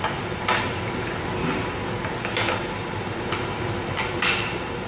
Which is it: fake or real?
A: real